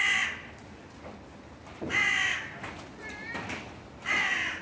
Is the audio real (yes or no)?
yes